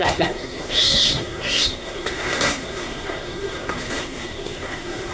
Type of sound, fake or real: fake